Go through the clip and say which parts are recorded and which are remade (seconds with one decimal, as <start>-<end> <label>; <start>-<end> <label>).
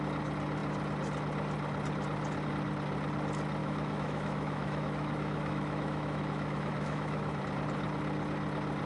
0.0-3.6 recorded; 3.6-7.4 remade; 7.4-8.9 recorded